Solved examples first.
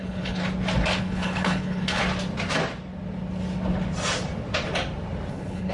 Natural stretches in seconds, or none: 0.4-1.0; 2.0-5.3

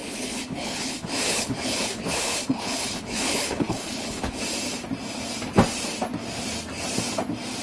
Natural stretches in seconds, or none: 4.4-7.6

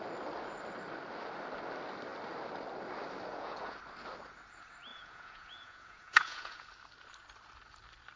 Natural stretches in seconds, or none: 0.0-3.3; 3.8-4.9; 6.7-8.2

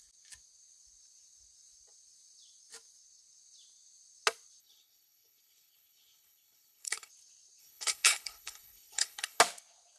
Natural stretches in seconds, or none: 0.0-4.6; 7.1-7.6; 9.4-10.0